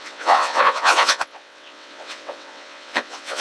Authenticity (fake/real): fake